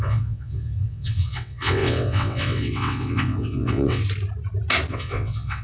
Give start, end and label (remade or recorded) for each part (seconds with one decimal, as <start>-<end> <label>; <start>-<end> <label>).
0.0-4.0 remade; 4.0-4.9 recorded; 4.9-5.6 remade